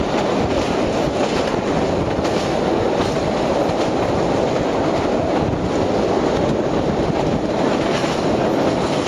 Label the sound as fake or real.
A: real